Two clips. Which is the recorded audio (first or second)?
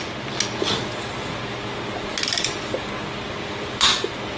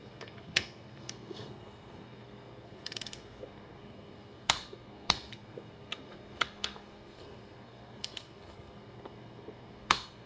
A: first